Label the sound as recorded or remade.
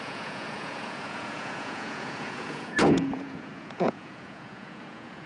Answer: remade